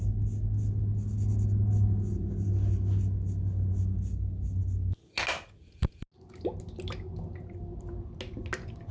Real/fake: real